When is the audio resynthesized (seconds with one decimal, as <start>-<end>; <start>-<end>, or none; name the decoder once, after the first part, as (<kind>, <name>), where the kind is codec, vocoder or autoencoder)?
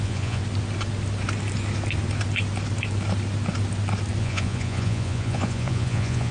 0.0-0.4 (vocoder, Vocos); 4.2-6.3